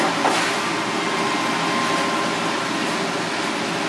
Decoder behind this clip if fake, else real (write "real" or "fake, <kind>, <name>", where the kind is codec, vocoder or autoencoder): real